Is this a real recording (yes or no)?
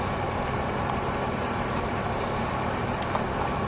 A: no